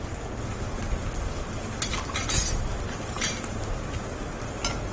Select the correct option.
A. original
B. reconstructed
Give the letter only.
A